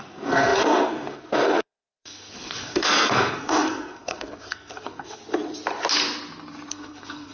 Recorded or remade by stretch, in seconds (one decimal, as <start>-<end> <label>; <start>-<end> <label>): 0.0-5.2 remade; 5.2-6.7 recorded; 6.7-7.3 remade